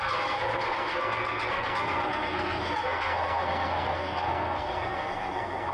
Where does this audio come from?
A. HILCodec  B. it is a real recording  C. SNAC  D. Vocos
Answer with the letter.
C